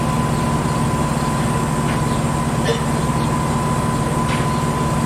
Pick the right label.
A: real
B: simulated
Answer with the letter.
A